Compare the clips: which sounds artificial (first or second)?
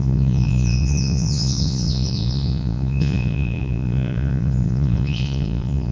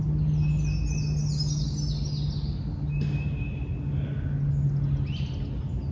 first